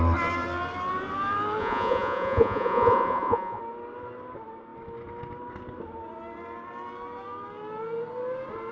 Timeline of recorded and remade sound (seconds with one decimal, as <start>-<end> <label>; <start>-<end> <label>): 0.0-1.6 recorded; 1.6-3.6 remade; 3.6-8.7 recorded